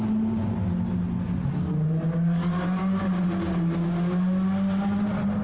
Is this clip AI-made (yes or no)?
no